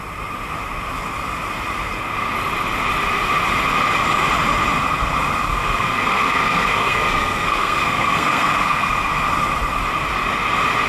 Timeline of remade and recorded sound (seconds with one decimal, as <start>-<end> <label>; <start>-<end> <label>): 0.0-5.5 recorded; 5.5-8.9 remade; 8.9-10.9 recorded